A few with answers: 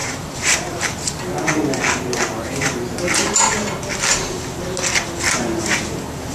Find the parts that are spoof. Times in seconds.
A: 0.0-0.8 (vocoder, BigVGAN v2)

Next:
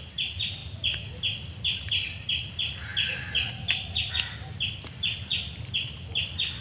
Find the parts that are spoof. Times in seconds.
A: none

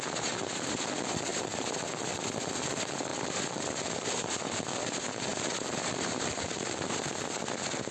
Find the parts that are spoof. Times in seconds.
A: 1.3-1.9 (vocoder, BigVGAN v2); 3.1-4.6; 5.3-7.0

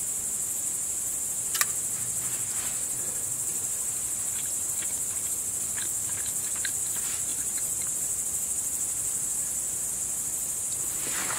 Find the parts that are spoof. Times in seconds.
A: 7.3-8.0 (vocoder, BigVGAN v2)